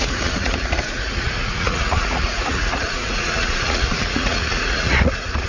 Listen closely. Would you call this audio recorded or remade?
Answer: remade